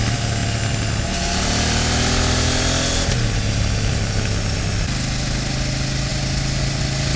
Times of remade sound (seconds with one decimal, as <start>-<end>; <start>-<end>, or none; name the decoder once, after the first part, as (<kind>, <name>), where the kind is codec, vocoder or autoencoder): none